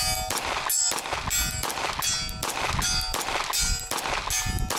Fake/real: real